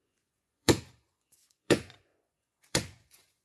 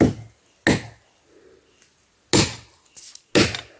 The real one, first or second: second